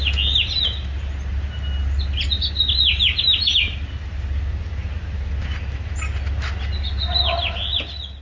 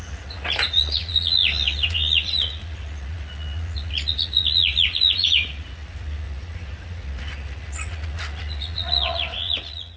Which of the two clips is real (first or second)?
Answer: first